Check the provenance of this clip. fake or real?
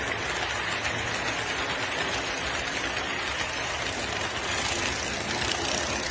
real